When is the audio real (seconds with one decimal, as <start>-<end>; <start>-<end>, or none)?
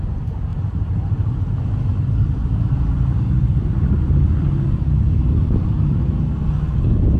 0.0-0.5; 1.3-1.9; 6.2-7.2